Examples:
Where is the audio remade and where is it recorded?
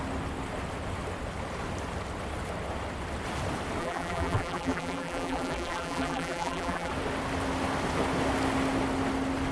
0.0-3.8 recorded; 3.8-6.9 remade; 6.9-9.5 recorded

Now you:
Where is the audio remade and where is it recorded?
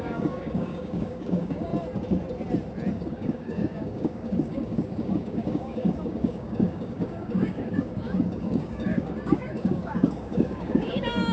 0.0-1.7 remade; 1.7-2.9 recorded; 2.9-11.3 remade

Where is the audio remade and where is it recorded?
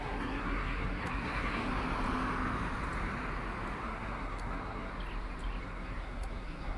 0.0-1.7 remade; 1.7-3.8 recorded; 3.8-4.9 remade; 4.9-5.6 recorded; 5.6-6.8 remade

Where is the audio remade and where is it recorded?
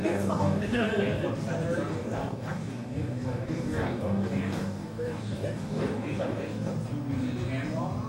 0.0-0.9 remade; 0.9-1.9 recorded; 1.9-6.7 remade; 6.7-8.1 recorded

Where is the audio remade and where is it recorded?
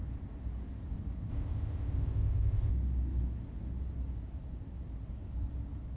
0.0-1.3 recorded; 1.3-2.7 remade; 2.7-6.0 recorded